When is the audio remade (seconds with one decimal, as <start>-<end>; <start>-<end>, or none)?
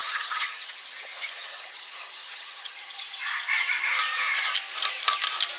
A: 0.0-3.0